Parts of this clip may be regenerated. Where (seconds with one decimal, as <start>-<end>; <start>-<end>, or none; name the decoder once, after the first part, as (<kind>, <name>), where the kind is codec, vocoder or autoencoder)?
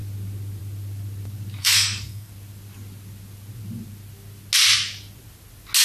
1.6-2.3 (codec, SNAC)